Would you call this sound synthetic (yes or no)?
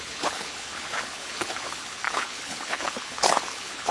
yes